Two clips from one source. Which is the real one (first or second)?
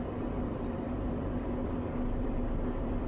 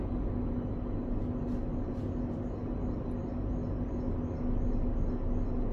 second